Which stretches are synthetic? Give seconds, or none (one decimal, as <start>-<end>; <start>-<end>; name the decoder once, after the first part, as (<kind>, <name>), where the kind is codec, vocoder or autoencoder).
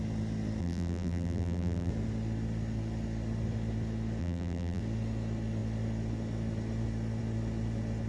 0.6-1.9 (vocoder, BigVGAN v2); 4.2-4.8